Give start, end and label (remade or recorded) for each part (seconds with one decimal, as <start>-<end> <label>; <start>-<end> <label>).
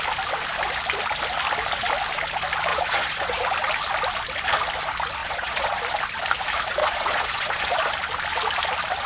0.0-2.7 recorded; 2.7-3.4 remade; 3.4-5.2 recorded; 5.2-5.8 remade; 5.8-6.8 recorded; 6.8-7.6 remade; 7.6-9.1 recorded